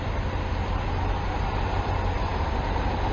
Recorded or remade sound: recorded